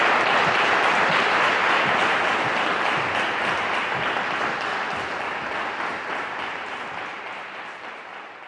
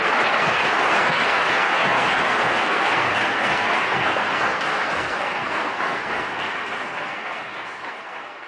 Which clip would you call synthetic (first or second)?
second